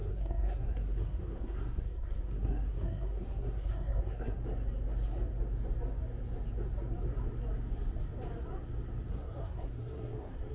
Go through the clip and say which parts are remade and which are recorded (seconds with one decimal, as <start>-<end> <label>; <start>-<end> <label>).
0.0-4.4 remade; 4.4-9.1 recorded; 9.1-10.5 remade